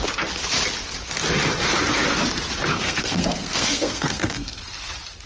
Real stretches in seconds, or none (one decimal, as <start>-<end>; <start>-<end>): 0.0-2.7; 4.6-5.3